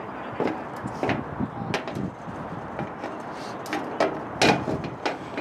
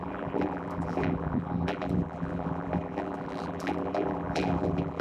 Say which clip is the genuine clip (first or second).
first